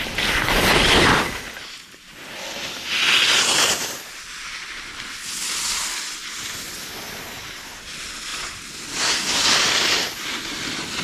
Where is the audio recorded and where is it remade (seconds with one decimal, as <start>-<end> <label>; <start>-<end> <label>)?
0.0-11.0 recorded